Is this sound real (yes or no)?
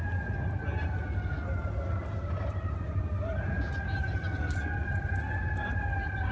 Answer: yes